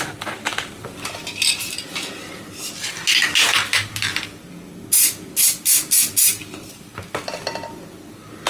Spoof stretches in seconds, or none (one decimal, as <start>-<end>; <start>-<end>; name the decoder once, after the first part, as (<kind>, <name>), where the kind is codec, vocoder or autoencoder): none